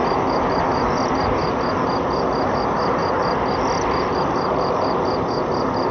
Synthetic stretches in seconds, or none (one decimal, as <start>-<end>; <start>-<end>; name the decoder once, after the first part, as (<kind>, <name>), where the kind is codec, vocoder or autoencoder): none